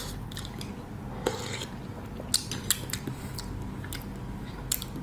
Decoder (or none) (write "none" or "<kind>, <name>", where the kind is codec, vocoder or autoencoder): none